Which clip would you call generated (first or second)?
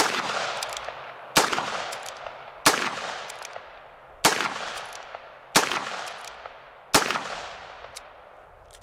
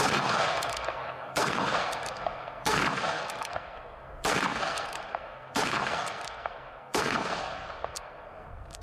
second